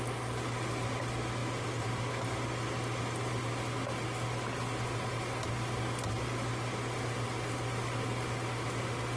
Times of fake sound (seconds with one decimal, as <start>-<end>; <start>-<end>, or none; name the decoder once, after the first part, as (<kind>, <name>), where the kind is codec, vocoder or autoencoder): none